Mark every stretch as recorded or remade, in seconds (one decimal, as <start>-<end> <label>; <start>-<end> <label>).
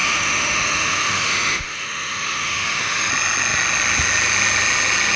0.0-3.1 remade; 3.1-5.2 recorded